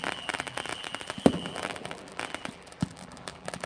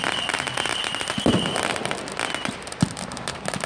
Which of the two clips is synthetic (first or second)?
first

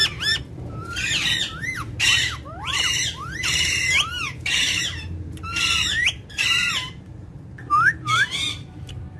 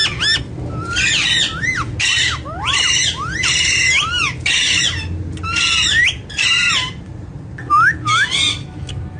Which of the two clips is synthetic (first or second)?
first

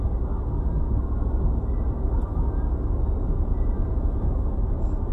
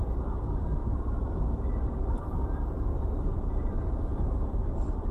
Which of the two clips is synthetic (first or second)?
second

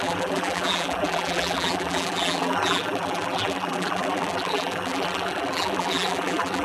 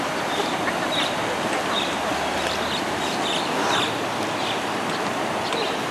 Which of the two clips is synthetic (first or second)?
first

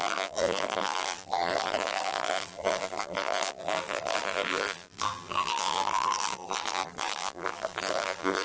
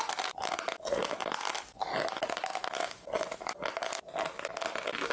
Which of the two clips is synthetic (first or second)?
first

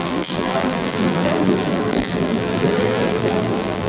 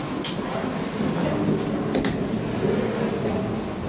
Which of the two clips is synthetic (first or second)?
first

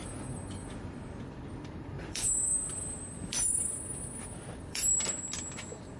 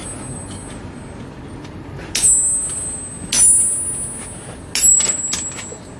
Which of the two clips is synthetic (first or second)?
first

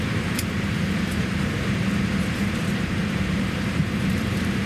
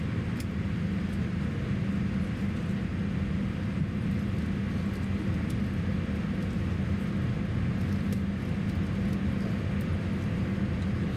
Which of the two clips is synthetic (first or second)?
first